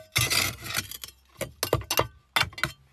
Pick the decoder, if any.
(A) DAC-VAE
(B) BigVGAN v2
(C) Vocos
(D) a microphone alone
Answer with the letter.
D